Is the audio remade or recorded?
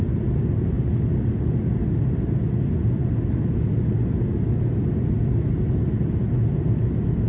recorded